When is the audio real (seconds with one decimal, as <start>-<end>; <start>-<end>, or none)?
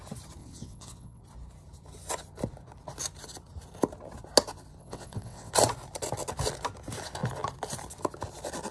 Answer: 0.0-0.4; 1.2-4.8; 5.5-8.7